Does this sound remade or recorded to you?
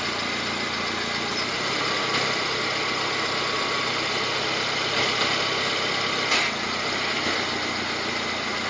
recorded